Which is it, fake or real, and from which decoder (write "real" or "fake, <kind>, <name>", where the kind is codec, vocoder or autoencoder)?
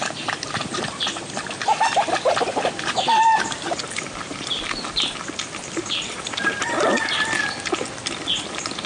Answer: fake, vocoder, BigVGAN v2